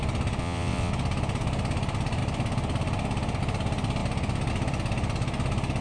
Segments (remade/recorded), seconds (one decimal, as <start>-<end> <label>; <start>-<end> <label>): 0.0-0.4 recorded; 0.4-0.9 remade; 0.9-5.8 recorded